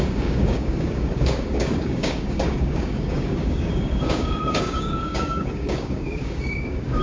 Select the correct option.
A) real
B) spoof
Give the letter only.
B